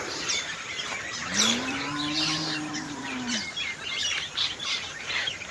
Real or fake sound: fake